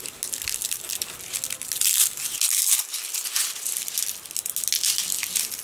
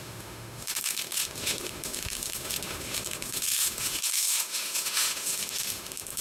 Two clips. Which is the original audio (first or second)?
first